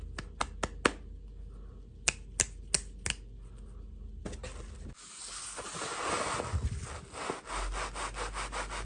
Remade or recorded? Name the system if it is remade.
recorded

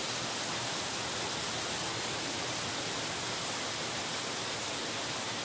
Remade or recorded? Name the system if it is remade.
recorded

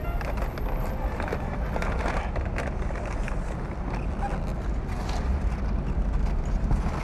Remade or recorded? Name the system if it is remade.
recorded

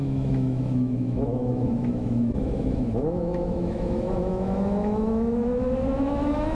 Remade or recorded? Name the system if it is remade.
remade, autoencoder, DAC-VAE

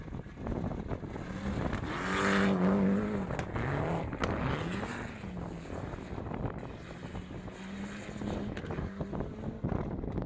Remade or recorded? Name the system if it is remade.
recorded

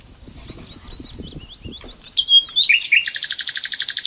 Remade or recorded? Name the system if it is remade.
recorded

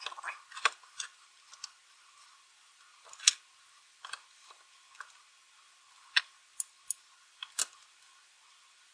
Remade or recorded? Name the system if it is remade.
recorded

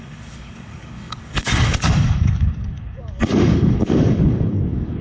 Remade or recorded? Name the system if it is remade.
remade, codec, DAC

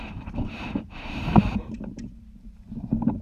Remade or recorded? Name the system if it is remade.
remade, vocoder, BigVGAN v2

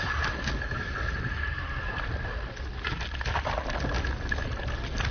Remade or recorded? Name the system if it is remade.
recorded